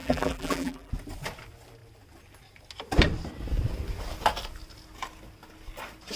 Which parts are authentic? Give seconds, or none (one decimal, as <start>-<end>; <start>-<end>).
0.9-6.2